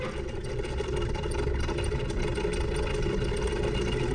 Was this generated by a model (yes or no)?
no